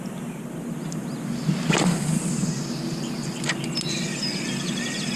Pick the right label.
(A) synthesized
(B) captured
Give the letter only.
B